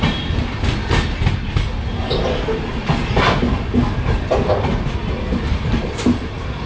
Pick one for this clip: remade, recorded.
recorded